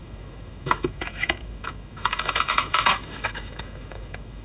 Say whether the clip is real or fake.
fake